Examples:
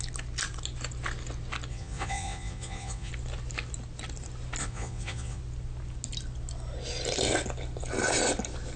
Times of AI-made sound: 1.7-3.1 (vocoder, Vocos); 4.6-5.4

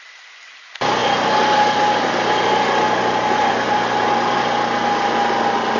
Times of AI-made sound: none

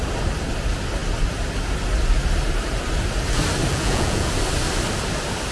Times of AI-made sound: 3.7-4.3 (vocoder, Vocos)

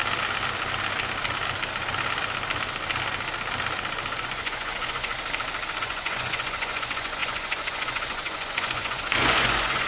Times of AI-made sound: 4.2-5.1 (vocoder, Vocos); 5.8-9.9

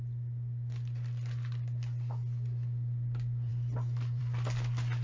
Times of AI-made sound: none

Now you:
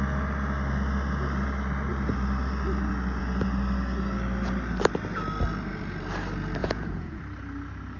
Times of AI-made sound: 6.6-7.2 (vocoder, Vocos)

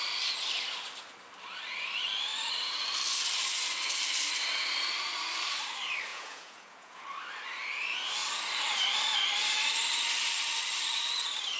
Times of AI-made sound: 6.1-7.0 (vocoder, Vocos)